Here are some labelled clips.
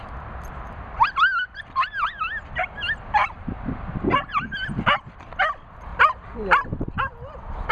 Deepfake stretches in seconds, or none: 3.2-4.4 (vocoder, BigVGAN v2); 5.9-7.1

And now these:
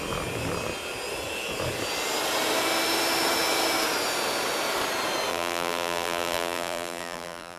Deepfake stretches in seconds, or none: 5.3-7.6 (vocoder, BigVGAN v2)

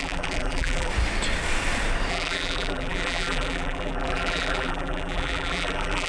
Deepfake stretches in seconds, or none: 0.0-0.9 (vocoder, BigVGAN v2); 2.1-6.1

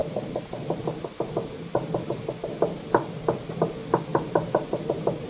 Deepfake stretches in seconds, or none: 4.1-5.3 (vocoder, BigVGAN v2)

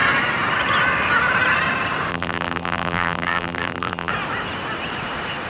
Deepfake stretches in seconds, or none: 2.1-4.1 (vocoder, BigVGAN v2)

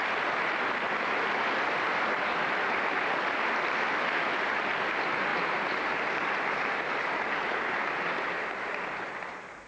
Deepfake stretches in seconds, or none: 5.3-8.3 (vocoder, BigVGAN v2)

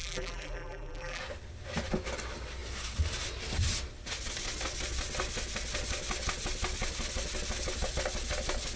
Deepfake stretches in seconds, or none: 0.0-1.2 (vocoder, BigVGAN v2)

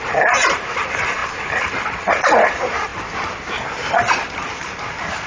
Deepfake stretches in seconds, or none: 0.0-2.9 (vocoder, BigVGAN v2); 4.5-5.3